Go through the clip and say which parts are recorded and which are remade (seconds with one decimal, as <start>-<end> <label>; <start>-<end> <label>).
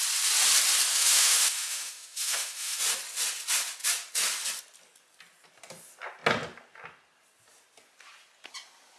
0.0-0.9 recorded; 0.9-2.8 remade; 2.8-9.0 recorded